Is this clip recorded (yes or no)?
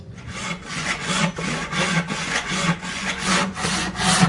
no